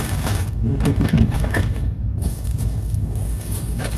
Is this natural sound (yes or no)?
no